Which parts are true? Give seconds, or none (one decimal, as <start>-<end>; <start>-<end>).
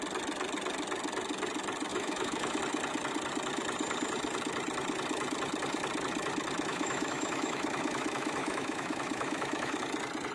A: 0.0-1.9; 2.6-6.7; 9.8-10.3